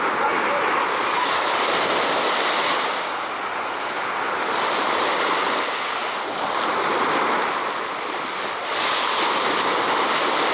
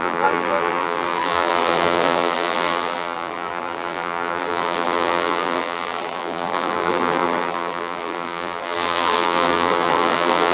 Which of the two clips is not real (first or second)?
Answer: second